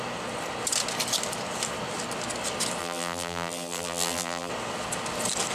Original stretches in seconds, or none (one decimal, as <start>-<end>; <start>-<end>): 0.0-2.8; 4.5-5.5